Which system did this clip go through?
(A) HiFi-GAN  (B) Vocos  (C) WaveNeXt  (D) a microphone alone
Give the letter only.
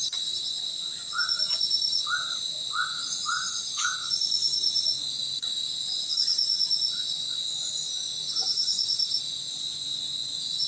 B